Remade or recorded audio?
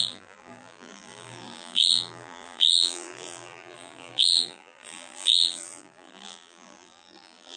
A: remade